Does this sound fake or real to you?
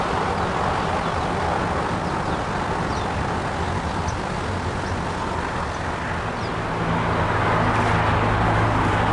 real